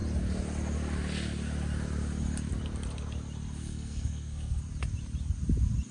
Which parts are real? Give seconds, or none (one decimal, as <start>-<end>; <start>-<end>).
0.0-3.6; 4.6-5.9

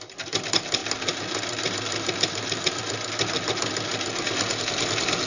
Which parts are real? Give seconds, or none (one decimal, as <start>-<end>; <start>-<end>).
0.0-5.3

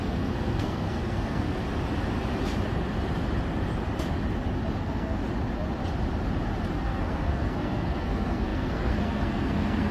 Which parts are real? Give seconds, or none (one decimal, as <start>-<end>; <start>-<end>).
1.6-4.8; 5.2-6.7

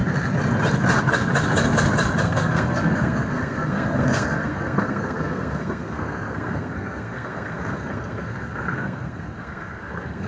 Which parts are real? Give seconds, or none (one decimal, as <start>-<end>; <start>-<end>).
0.0-2.2

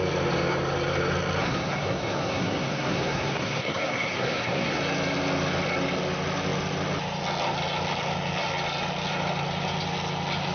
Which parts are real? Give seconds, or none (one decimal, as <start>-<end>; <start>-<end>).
0.0-1.4; 4.8-10.5

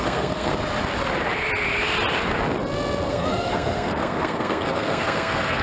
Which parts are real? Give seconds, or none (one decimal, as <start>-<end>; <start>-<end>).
0.5-3.1

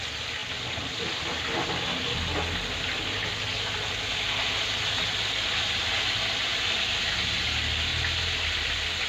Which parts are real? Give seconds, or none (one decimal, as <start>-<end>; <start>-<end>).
0.0-9.1